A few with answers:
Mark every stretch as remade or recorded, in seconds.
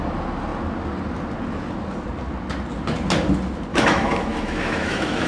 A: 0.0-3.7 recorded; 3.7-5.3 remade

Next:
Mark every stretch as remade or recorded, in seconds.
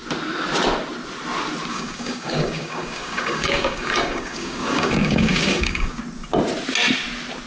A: 0.0-1.7 recorded; 1.7-6.0 remade; 6.0-7.5 recorded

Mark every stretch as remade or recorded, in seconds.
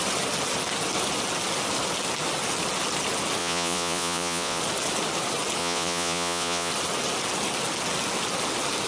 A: 0.0-3.4 recorded; 3.4-4.6 remade; 4.6-5.6 recorded; 5.6-6.7 remade; 6.7-8.9 recorded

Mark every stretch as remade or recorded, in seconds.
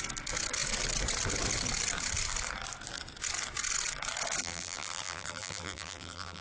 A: 0.0-4.4 recorded; 4.4-6.4 remade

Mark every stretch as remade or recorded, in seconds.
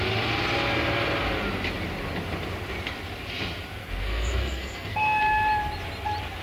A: 0.0-3.8 recorded; 3.8-5.2 remade; 5.2-6.4 recorded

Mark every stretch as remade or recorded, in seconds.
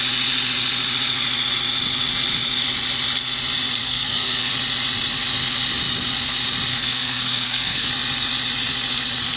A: 0.0-3.8 recorded; 3.8-4.5 remade; 4.5-6.7 recorded; 6.7-7.9 remade; 7.9-9.4 recorded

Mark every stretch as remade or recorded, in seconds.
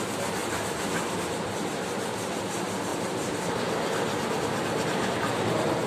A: 0.0-0.4 recorded; 0.4-2.3 remade; 2.3-2.9 recorded; 2.9-4.3 remade; 4.3-5.9 recorded